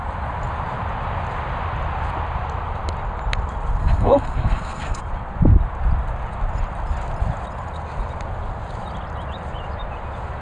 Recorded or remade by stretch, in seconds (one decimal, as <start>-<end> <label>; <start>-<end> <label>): 0.0-3.8 recorded; 3.8-5.0 remade; 5.0-10.4 recorded

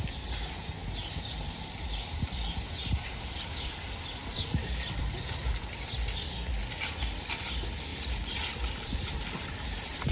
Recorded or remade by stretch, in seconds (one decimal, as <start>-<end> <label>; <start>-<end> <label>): 0.0-0.8 recorded; 0.8-1.5 remade; 1.5-2.8 recorded; 2.8-3.5 remade; 3.5-7.9 recorded; 7.9-10.1 remade

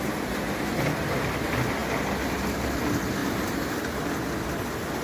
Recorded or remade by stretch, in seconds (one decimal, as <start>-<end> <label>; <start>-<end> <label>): 0.0-3.2 recorded; 3.2-3.8 remade; 3.8-5.0 recorded

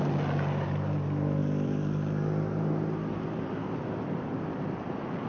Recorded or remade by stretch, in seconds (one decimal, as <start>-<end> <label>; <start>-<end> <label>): 0.0-5.3 recorded

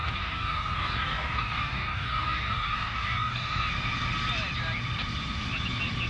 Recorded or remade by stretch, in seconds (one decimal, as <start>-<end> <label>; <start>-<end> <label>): 0.0-3.7 remade; 3.7-6.1 recorded